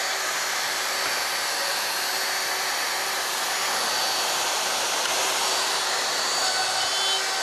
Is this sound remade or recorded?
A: recorded